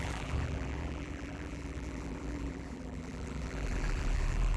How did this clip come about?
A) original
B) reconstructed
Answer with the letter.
B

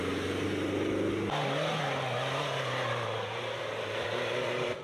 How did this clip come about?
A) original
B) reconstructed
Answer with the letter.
A